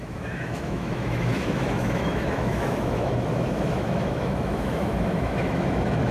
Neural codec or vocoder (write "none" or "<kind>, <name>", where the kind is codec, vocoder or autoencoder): autoencoder, DAC-VAE